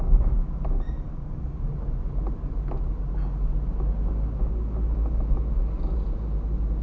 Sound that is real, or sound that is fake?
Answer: real